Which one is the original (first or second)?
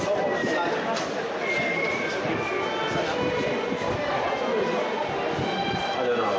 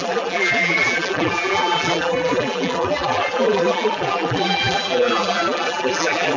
first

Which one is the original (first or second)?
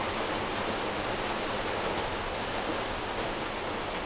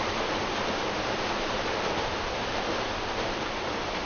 first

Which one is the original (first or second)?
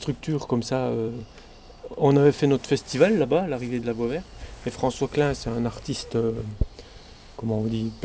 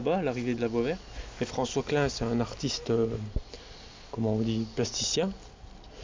second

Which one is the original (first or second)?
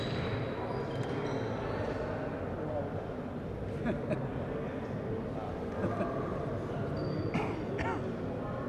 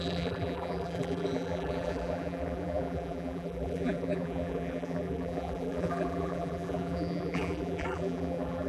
first